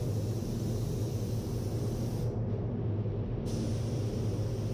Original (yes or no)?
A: yes